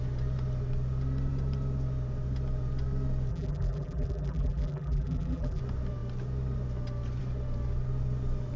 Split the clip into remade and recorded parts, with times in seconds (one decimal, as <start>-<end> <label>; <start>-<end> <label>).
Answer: 0.0-3.3 recorded; 3.3-5.6 remade; 5.6-8.6 recorded